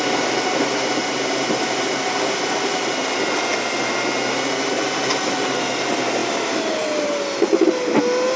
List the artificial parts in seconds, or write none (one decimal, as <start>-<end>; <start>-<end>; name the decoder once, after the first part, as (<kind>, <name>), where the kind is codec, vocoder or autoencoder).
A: none